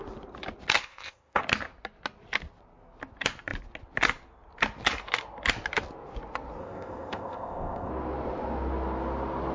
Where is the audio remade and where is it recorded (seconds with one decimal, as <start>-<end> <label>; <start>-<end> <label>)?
0.0-0.8 recorded; 0.8-1.4 remade; 1.4-6.6 recorded; 6.6-7.9 remade; 7.9-9.5 recorded